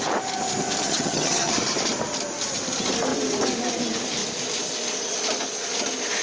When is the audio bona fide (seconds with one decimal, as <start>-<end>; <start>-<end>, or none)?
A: 0.0-0.8; 1.5-6.2